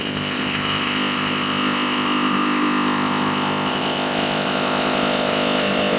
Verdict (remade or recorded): remade